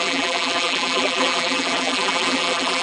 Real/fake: fake